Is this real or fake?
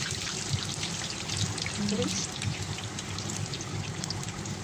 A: fake